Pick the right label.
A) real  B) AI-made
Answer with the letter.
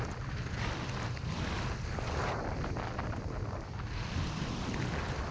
A